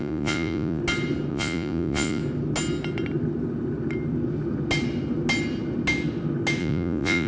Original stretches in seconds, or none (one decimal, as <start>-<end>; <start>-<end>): 0.8-1.3; 2.2-6.6